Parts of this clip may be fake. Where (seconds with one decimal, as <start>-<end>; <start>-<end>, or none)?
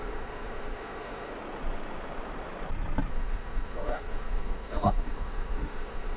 0.0-1.3; 3.1-6.2